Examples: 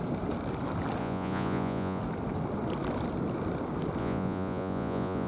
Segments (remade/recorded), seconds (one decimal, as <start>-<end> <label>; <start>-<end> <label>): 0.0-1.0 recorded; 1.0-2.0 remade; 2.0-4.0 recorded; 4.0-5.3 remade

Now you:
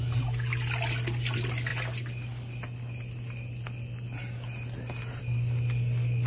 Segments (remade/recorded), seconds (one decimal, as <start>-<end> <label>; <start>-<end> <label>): 0.0-6.3 recorded

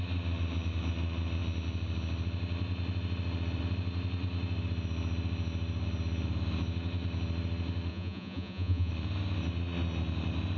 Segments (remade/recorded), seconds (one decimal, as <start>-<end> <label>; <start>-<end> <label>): 0.0-7.9 recorded; 7.9-8.9 remade; 8.9-10.6 recorded

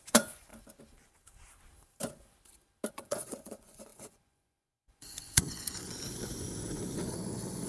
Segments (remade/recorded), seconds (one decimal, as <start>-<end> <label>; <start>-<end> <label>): 0.0-0.5 remade; 0.5-2.9 recorded; 2.9-7.7 remade

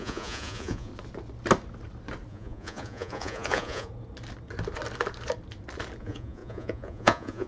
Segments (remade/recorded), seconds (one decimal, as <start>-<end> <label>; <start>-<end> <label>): 0.0-0.9 remade; 0.9-2.3 recorded; 2.3-3.9 remade; 3.9-6.0 recorded; 6.0-7.5 remade

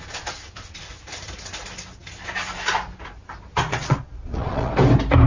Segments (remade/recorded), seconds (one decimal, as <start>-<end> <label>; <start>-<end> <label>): 0.0-3.7 recorded; 3.7-4.7 remade; 4.7-5.3 recorded

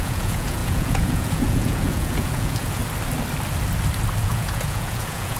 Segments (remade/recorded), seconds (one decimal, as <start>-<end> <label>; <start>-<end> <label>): 0.0-2.8 remade; 2.8-4.2 recorded; 4.2-5.4 remade

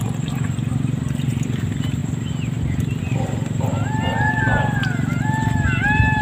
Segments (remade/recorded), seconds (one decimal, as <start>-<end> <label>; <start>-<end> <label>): 0.0-6.2 recorded